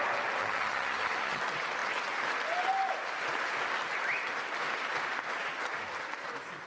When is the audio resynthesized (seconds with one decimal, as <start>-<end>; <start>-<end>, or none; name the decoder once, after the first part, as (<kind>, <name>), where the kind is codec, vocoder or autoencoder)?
0.4-1.4 (vocoder, HiFi-GAN)